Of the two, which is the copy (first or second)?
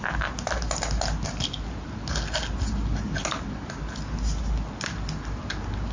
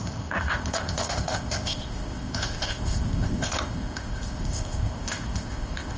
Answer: second